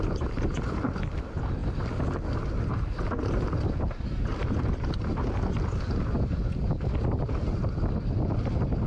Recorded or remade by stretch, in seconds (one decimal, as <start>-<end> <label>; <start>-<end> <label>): 0.0-1.6 remade; 1.6-6.7 recorded; 6.7-8.9 remade